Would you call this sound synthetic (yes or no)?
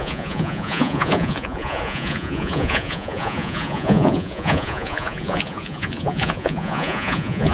yes